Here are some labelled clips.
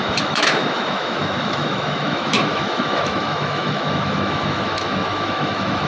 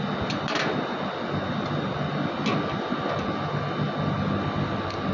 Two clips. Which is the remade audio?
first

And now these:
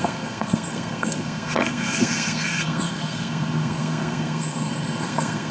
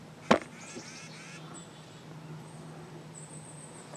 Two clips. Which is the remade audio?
first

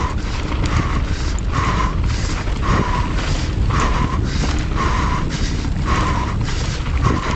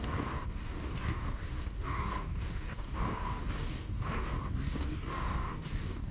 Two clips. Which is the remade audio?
second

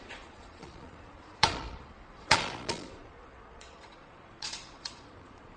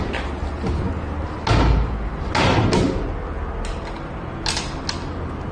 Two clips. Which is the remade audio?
first